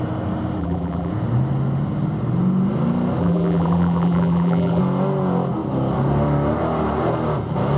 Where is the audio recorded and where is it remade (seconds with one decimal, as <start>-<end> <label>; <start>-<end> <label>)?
0.0-0.6 recorded; 0.6-1.1 remade; 1.1-3.2 recorded; 3.2-4.8 remade; 4.8-7.8 recorded